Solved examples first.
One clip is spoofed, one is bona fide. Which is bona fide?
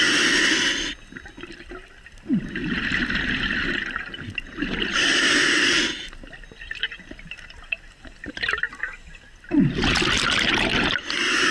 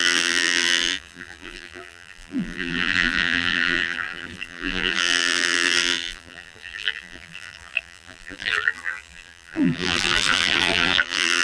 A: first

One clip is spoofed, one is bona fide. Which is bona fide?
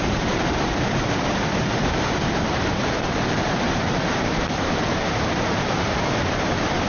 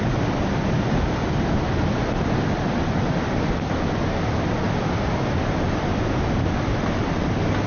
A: second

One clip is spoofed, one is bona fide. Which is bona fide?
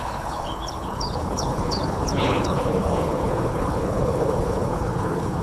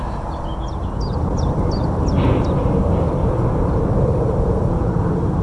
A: second